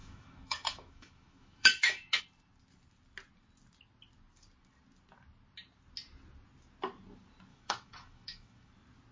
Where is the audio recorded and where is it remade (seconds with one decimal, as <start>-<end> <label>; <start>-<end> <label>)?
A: 0.0-2.2 remade; 2.2-7.5 recorded; 7.5-8.7 remade; 8.7-9.1 recorded